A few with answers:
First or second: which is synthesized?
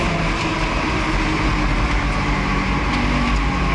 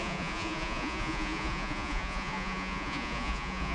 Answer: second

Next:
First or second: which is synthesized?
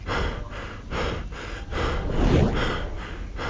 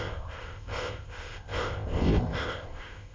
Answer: second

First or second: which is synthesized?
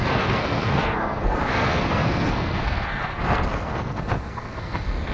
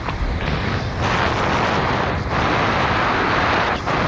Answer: first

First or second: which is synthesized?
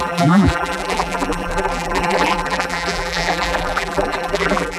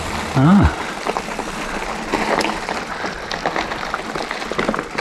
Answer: first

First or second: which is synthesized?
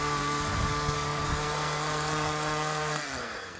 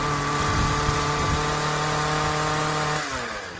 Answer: first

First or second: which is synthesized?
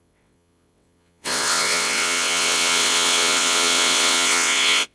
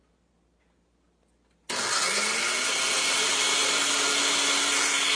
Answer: first